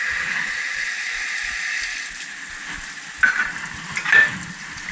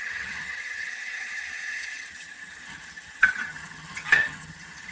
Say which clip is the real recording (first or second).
first